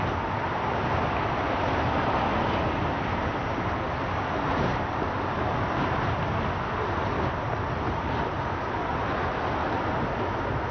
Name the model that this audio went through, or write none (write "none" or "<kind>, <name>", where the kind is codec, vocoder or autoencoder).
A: none